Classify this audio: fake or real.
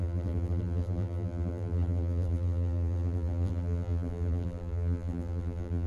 fake